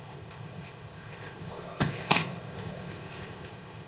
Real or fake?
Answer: fake